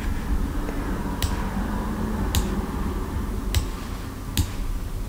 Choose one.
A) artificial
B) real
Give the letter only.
B